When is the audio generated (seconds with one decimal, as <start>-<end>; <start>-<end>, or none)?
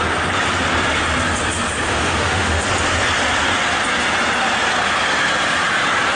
1.9-2.6